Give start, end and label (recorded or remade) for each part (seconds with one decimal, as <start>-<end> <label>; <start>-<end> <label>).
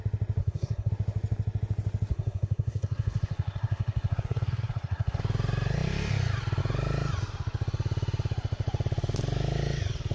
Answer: 0.0-0.4 recorded; 0.4-0.9 remade; 0.9-2.1 recorded; 2.1-5.2 remade; 5.2-10.1 recorded